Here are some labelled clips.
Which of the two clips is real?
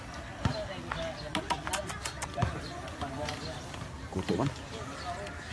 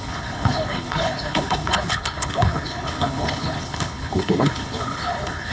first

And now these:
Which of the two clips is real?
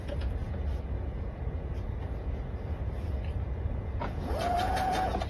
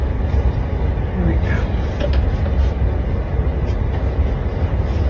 second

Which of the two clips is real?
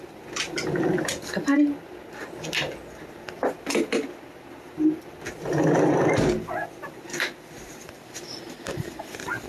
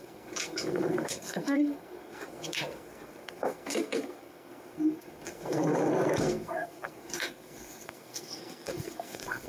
first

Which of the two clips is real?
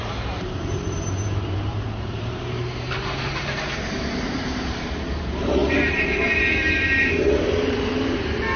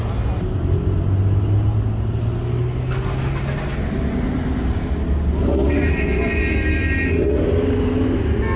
second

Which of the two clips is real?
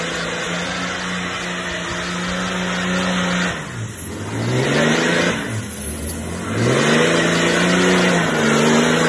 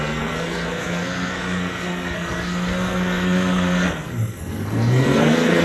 first